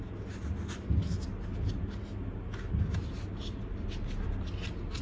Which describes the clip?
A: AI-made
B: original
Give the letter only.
B